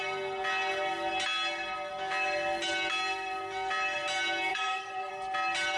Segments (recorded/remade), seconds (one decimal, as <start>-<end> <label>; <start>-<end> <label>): 0.0-4.5 recorded; 4.5-5.1 remade; 5.1-5.8 recorded